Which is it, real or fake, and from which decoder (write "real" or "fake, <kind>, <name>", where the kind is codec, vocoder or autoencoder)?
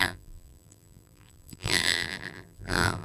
fake, vocoder, BigVGAN v2